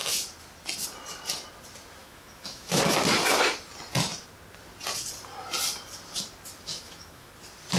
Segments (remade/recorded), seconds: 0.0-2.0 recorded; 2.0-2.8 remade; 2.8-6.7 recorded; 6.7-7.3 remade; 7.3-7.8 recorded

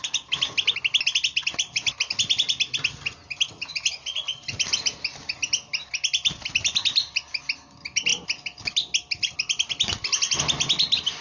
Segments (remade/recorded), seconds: 0.0-11.2 recorded

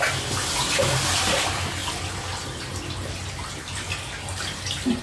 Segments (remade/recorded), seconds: 0.0-5.0 recorded

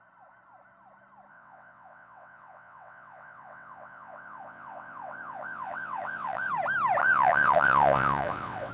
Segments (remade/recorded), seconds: 0.0-1.3 recorded; 1.3-6.5 remade; 6.5-7.0 recorded; 7.0-8.7 remade

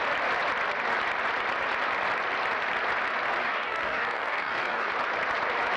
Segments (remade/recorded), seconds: 0.0-3.4 recorded; 3.4-4.9 remade; 4.9-5.8 recorded

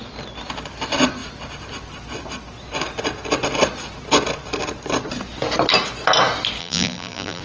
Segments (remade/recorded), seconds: 0.0-6.6 recorded; 6.6-7.4 remade

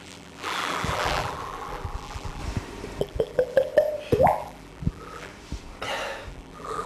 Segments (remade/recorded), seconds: 0.0-2.4 remade; 2.4-3.0 recorded; 3.0-3.7 remade; 3.7-4.2 recorded; 4.2-5.3 remade; 5.3-6.3 recorded; 6.3-6.9 remade

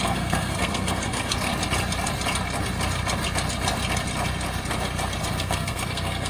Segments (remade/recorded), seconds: 0.0-1.5 remade; 1.5-5.3 recorded; 5.3-6.3 remade